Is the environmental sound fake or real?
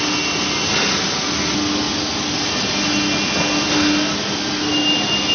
real